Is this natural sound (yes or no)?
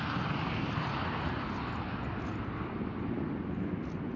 yes